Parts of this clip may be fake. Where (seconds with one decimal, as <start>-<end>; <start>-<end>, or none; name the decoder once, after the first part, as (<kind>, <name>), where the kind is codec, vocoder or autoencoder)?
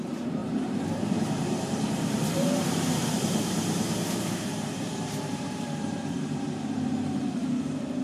0.0-8.0 (vocoder, BigVGAN v2)